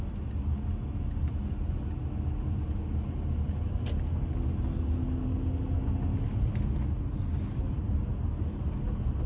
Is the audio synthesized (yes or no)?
no